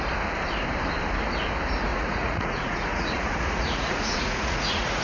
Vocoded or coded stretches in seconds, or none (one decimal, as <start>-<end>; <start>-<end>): 1.9-5.0